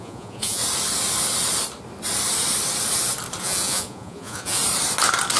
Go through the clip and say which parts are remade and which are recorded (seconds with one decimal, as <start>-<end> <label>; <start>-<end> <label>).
0.0-0.6 remade; 0.6-3.4 recorded; 3.4-4.6 remade; 4.6-5.4 recorded